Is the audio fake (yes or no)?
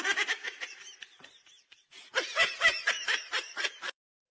yes